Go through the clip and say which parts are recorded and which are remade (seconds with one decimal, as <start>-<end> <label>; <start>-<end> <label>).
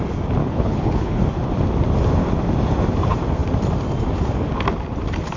0.0-0.4 recorded; 0.4-1.2 remade; 1.2-5.4 recorded